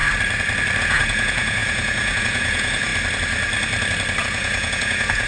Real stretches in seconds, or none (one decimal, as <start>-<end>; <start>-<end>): 0.0-0.8; 2.9-4.2